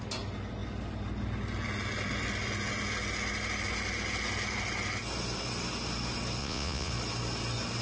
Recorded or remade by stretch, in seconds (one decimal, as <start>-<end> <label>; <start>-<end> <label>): 0.0-6.4 recorded; 6.4-6.9 remade; 6.9-7.8 recorded